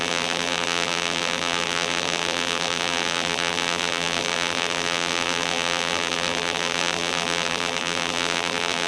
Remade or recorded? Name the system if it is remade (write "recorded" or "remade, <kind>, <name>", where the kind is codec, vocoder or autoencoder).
remade, vocoder, BigVGAN v2